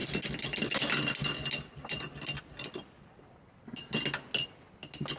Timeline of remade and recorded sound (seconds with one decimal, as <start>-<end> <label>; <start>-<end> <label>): 0.0-5.2 recorded